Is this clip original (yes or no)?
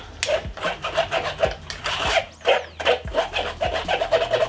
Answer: yes